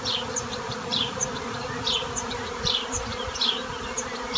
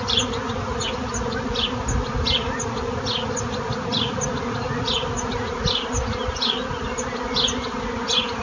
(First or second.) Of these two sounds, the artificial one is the first